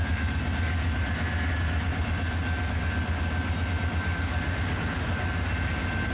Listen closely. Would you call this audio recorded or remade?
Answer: recorded